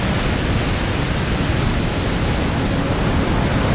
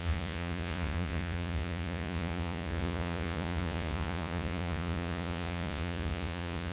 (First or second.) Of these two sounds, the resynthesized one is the second